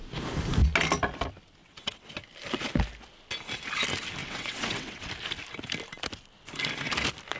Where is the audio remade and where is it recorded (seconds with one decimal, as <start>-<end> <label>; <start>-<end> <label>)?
0.0-1.6 recorded; 1.6-2.1 remade; 2.1-4.2 recorded; 4.2-5.1 remade; 5.1-7.4 recorded